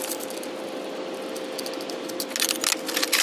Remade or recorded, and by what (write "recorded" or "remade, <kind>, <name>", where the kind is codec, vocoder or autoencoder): recorded